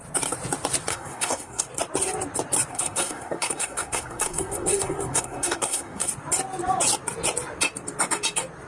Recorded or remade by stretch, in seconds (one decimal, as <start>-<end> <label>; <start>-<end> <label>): 0.0-0.9 recorded; 0.9-1.6 remade; 1.6-2.7 recorded; 2.7-6.1 remade; 6.1-8.7 recorded